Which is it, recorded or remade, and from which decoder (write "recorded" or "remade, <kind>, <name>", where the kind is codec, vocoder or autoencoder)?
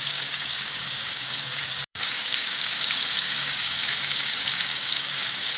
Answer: remade, codec, DAC